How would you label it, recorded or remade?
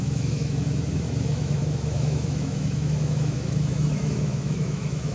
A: remade